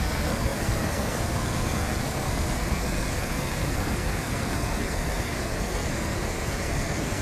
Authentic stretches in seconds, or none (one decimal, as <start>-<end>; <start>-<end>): none